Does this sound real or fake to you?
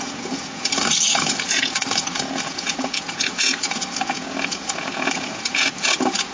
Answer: fake